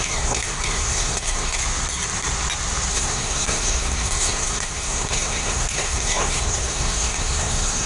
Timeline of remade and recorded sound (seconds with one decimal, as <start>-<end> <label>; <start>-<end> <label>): 0.0-1.6 remade; 1.6-2.9 recorded; 2.9-7.9 remade